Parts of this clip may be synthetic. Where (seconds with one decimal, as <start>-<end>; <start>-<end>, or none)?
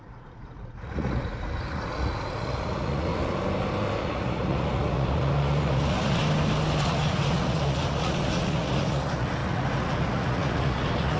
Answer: 0.0-3.1; 4.0-6.2; 6.8-11.2